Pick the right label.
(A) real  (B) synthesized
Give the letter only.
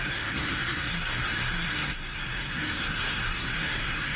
B